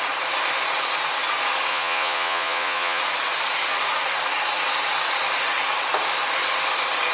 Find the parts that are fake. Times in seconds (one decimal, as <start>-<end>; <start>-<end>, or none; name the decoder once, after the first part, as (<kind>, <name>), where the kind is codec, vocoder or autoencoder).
1.7-3.0 (vocoder, Vocos)